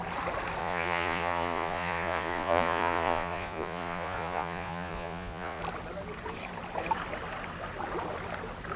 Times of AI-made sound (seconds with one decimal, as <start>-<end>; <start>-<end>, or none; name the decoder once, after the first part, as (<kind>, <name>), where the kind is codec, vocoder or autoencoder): 0.6-5.6 (vocoder, Vocos)